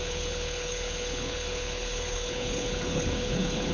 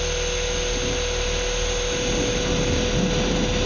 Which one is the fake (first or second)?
first